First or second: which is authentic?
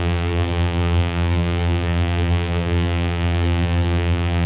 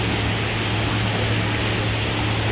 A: second